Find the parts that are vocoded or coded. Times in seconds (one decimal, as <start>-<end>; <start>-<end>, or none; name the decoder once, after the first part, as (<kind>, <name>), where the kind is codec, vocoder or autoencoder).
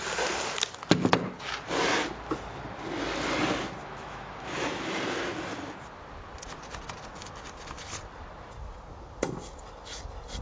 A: 3.8-5.0 (autoencoder, DAC-VAE)